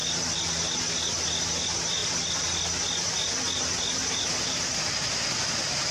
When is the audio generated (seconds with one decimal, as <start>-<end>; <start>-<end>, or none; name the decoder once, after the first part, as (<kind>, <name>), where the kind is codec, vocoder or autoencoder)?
2.0-5.5 (vocoder, BigVGAN v2)